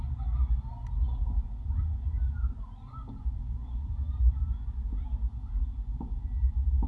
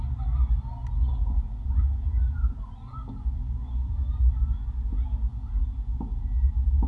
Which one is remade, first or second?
first